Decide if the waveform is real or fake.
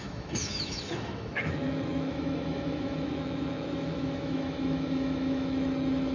fake